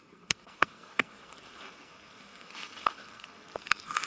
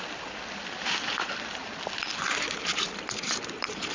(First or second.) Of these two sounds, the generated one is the first